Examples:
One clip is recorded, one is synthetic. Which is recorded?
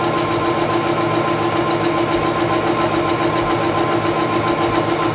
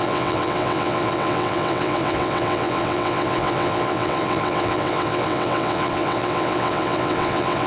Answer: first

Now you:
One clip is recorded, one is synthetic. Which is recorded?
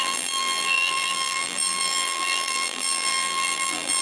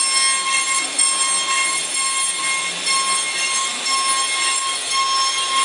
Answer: second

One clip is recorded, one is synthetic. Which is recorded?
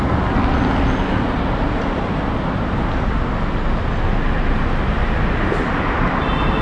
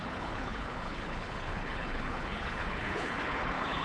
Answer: first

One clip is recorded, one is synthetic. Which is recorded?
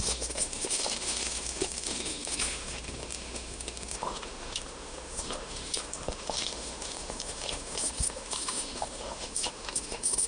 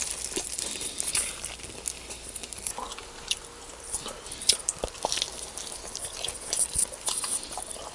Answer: second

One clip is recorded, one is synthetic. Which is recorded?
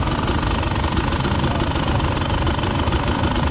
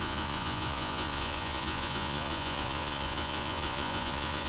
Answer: first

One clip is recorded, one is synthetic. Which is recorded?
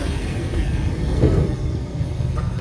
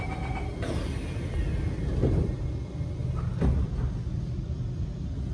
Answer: second